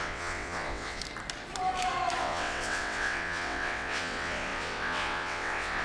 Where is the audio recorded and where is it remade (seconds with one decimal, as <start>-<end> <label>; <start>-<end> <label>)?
0.0-1.0 remade; 1.0-2.2 recorded; 2.2-5.8 remade